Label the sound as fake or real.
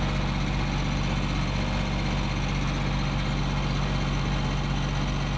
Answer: real